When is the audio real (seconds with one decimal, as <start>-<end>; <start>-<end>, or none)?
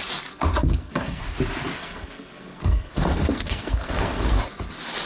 0.0-0.6; 1.2-1.8; 4.4-5.1